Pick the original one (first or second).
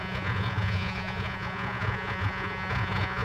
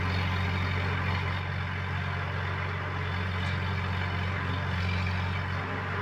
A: second